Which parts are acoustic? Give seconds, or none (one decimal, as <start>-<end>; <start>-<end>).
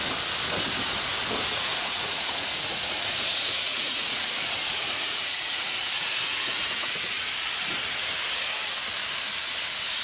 0.0-1.5; 4.2-4.7; 7.3-10.0